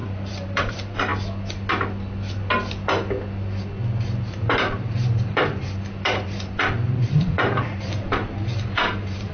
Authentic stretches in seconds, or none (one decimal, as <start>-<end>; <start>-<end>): 1.1-4.2; 8.2-8.7